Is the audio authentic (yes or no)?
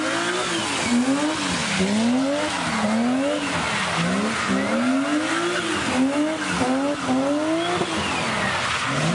yes